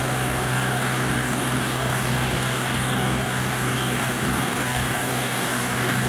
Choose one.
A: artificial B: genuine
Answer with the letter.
A